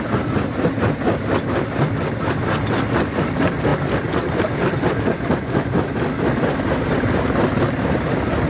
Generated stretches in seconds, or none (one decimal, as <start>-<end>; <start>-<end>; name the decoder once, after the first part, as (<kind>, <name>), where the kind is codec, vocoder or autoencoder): none